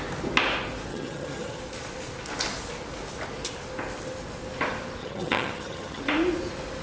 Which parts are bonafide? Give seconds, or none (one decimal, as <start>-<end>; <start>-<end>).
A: 0.0-0.9; 1.6-5.0; 6.0-6.8